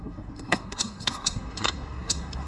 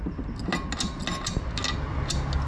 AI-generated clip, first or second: first